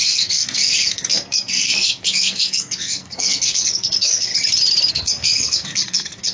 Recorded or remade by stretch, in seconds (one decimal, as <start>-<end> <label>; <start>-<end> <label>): 0.0-4.3 remade; 4.3-4.9 recorded; 4.9-6.3 remade